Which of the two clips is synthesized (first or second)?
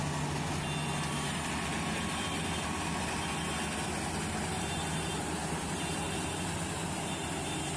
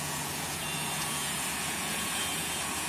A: second